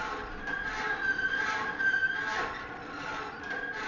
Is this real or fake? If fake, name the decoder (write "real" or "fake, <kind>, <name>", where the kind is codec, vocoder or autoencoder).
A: real